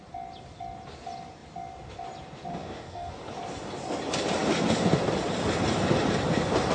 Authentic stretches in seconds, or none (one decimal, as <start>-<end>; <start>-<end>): 0.0-2.5; 3.1-6.7